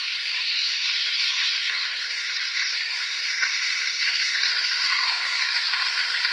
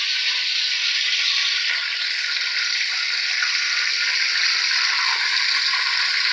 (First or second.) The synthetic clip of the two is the first